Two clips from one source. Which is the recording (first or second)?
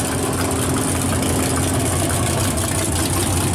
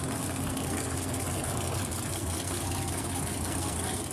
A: first